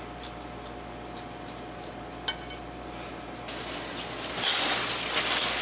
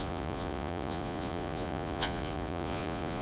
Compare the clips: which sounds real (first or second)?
first